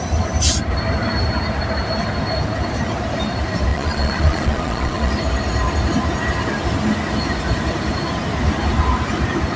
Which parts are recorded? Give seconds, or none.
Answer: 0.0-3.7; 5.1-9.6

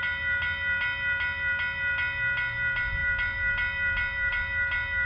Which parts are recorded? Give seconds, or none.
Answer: 0.0-5.1

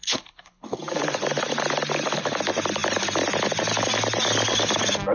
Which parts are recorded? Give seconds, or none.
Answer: 0.8-5.1

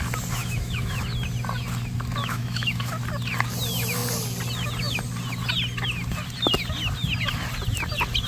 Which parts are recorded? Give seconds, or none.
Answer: 0.0-0.4; 1.0-2.2; 2.9-8.3